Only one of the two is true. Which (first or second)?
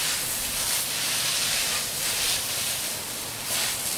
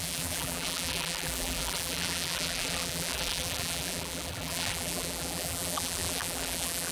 first